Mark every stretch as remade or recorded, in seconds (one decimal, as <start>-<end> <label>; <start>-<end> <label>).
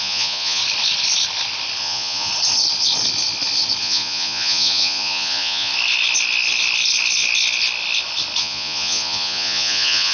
0.0-0.6 remade; 0.6-1.8 recorded; 1.8-2.3 remade; 2.3-3.8 recorded; 3.8-5.7 remade; 5.7-8.4 recorded; 8.4-10.1 remade